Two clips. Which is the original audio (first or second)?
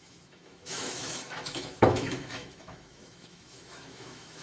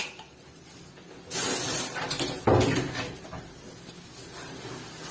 second